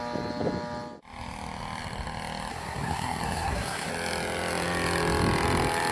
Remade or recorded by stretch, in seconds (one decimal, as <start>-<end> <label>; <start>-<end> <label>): 0.0-2.5 recorded; 2.5-3.9 remade; 3.9-5.9 recorded